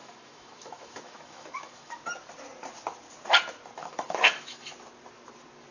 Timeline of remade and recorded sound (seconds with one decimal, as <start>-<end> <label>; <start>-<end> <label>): 0.0-2.0 remade; 2.0-3.8 recorded; 3.8-4.7 remade; 4.7-5.7 recorded